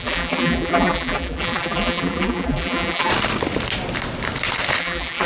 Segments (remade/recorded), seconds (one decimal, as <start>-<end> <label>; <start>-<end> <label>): 0.0-3.1 remade; 3.1-4.8 recorded; 4.8-5.3 remade